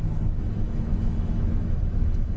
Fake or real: fake